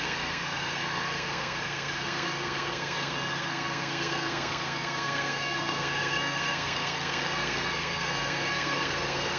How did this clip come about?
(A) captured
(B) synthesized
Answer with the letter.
B